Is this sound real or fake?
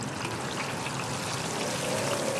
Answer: real